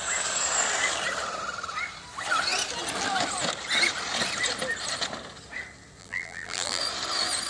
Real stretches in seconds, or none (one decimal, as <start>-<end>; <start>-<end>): 0.0-6.0; 6.8-7.5